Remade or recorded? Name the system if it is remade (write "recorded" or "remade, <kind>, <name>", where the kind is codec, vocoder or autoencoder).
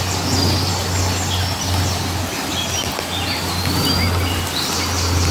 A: recorded